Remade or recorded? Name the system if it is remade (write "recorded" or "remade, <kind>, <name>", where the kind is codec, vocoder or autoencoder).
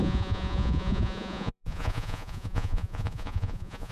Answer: remade, vocoder, Vocos